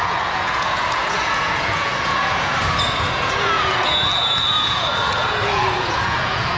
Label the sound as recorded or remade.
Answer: remade